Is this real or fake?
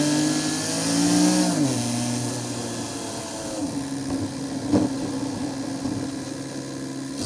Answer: real